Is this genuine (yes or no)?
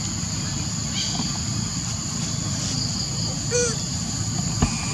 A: yes